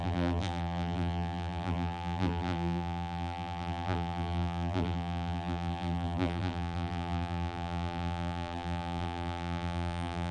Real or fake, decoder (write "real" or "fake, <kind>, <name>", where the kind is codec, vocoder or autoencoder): fake, vocoder, BigVGAN v2